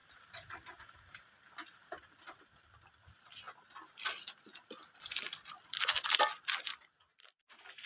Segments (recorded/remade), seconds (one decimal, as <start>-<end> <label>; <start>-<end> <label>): 0.0-1.3 remade; 1.3-7.9 recorded